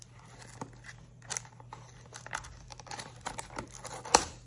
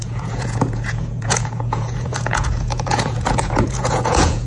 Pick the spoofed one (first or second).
second